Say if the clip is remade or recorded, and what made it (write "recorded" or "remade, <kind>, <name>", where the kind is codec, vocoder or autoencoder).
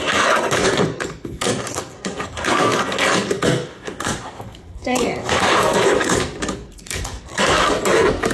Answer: remade, codec, SNAC